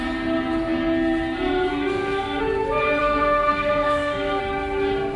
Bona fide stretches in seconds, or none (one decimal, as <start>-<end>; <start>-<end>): 0.0-1.7; 2.4-3.0; 4.4-5.2